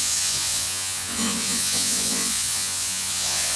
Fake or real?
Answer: fake